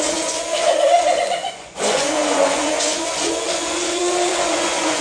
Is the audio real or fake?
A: fake